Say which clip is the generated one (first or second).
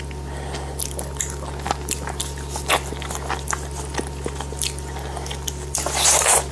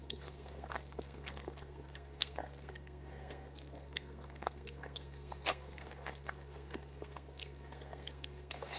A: second